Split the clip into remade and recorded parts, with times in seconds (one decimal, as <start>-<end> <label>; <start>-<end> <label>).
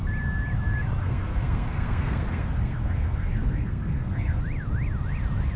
0.0-1.0 recorded; 1.0-4.4 remade; 4.4-5.6 recorded